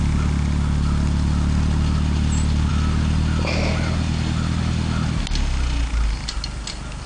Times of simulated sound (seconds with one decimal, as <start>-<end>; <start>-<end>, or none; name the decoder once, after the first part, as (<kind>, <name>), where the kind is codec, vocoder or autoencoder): none